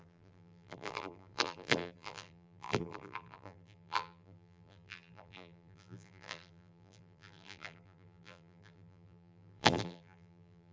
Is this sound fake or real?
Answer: fake